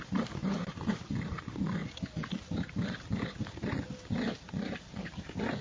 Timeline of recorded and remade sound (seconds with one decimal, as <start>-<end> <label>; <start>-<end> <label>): 0.0-1.8 remade; 1.8-5.6 recorded